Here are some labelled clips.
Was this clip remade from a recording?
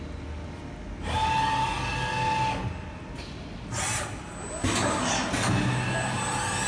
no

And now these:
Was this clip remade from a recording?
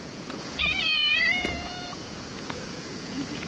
yes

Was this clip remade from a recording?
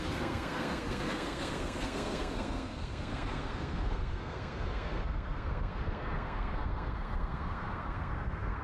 yes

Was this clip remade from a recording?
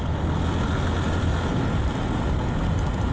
no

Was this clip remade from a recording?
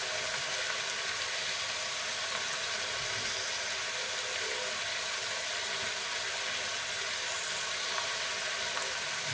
no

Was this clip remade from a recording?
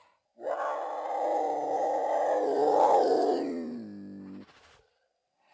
no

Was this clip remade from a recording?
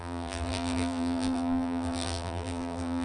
yes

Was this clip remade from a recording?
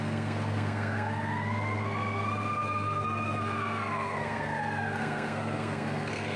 yes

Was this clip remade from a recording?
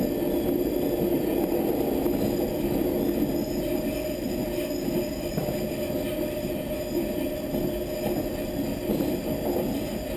no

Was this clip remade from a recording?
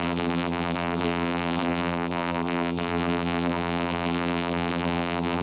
yes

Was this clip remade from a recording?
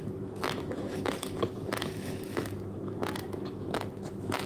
yes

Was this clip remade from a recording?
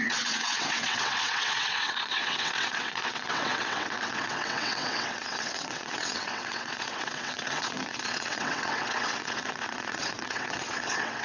yes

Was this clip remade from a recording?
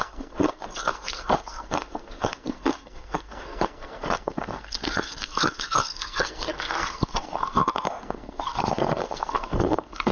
yes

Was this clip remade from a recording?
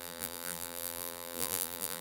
yes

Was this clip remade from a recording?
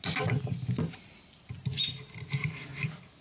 no